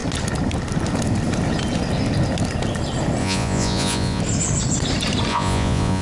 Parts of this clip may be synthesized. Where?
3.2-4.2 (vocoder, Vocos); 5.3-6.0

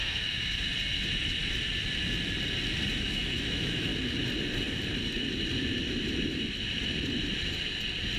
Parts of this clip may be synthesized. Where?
0.0-0.7 (autoencoder, DAC-VAE); 2.9-3.9

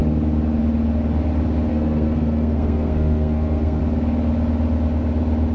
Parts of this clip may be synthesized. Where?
1.7-3.8 (codec, SNAC)

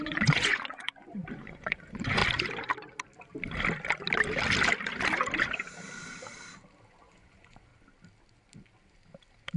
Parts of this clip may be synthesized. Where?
0.0-2.2 (vocoder, Vocos); 6.9-7.7

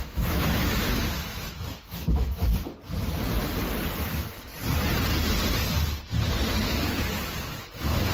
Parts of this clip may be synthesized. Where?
0.0-2.5 (autoencoder, DAC-VAE); 4.0-4.5; 6.6-8.1

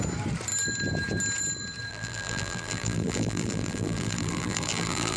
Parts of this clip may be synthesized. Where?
1.9-5.2 (vocoder, BigVGAN v2)

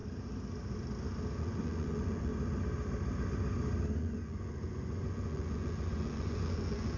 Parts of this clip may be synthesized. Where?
1.4-2.3 (vocoder, Vocos); 4.0-7.0

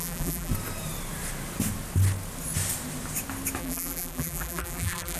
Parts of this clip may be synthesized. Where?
0.0-0.5 (vocoder, BigVGAN v2); 3.6-5.2